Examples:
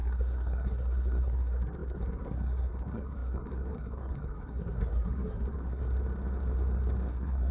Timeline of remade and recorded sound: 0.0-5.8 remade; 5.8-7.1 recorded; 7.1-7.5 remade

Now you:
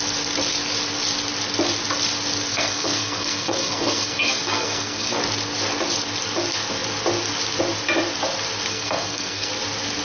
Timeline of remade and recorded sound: 0.0-2.5 recorded; 2.5-5.2 remade; 5.2-8.7 recorded; 8.7-9.5 remade; 9.5-10.0 recorded

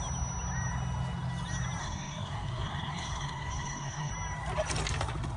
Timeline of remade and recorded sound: 0.0-1.8 recorded; 1.8-4.1 remade; 4.1-5.4 recorded

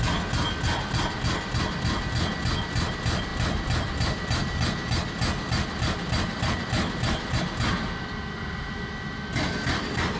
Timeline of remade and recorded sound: 0.0-10.2 recorded